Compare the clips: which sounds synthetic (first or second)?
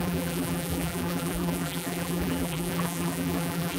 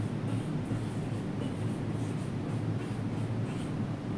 first